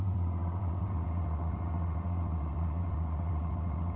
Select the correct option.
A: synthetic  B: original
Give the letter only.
A